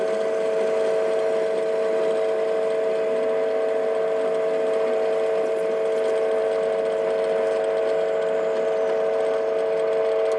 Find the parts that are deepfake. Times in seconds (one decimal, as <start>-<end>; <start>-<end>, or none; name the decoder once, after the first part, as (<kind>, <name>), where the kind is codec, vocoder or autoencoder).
none